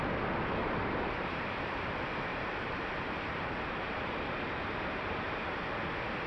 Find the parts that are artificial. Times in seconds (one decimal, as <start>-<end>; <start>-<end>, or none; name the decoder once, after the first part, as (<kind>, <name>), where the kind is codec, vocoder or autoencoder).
0.6-1.9 (vocoder, BigVGAN v2); 2.3-5.2